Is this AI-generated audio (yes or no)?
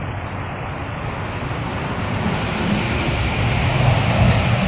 no